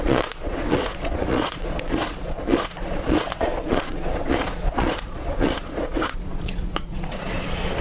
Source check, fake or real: fake